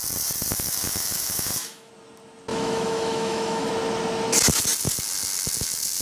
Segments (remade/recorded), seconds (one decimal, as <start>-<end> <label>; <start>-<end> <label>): 0.0-0.5 recorded; 0.5-1.9 remade; 1.9-2.5 recorded; 2.5-3.7 remade; 3.7-6.0 recorded